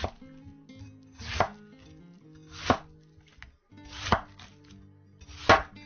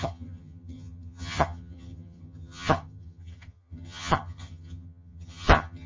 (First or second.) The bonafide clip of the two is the first